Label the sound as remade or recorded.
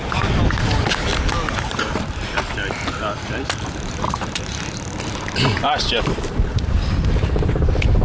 recorded